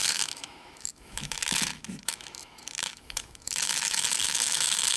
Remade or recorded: remade